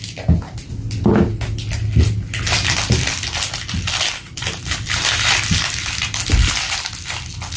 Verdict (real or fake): real